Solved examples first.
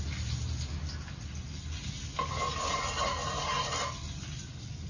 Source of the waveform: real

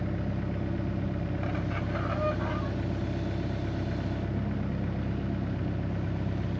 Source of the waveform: real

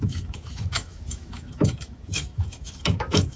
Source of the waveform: fake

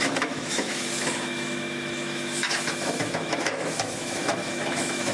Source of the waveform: fake